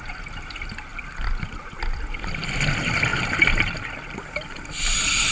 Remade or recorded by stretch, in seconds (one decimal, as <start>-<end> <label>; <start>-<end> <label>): 0.0-5.3 recorded